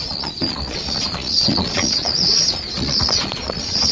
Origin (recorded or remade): remade